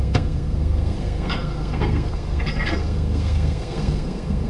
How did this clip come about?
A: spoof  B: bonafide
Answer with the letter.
A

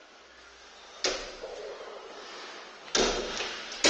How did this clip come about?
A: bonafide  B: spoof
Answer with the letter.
A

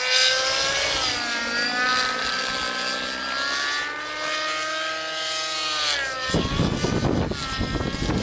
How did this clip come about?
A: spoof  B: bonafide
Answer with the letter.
B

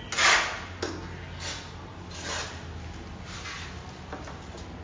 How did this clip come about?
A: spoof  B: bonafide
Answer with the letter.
B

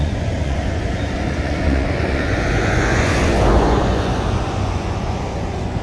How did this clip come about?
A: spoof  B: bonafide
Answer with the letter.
A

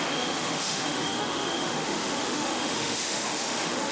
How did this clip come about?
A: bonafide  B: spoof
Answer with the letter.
B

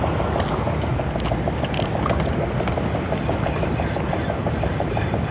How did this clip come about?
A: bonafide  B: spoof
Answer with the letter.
A